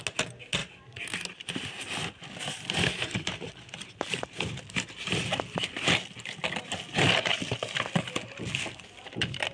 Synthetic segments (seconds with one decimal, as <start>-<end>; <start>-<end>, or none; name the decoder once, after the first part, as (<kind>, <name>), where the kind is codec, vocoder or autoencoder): none

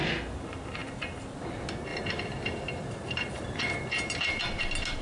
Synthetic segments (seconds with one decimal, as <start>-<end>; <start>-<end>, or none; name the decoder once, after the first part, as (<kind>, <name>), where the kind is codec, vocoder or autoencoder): 1.9-4.4 (vocoder, BigVGAN v2)

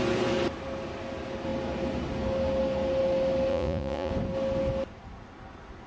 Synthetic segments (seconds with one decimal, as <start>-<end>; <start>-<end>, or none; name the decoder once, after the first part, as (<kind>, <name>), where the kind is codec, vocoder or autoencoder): 3.5-4.1 (vocoder, Vocos)

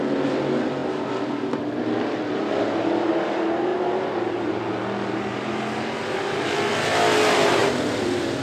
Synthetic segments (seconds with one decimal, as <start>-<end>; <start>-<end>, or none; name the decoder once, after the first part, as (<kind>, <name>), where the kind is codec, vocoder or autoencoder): 7.6-8.4 (vocoder, BigVGAN v2)